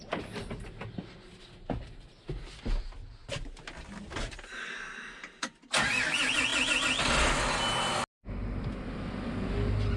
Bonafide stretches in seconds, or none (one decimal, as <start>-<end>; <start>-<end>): 0.0-10.0